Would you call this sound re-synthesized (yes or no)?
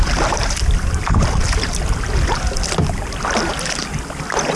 no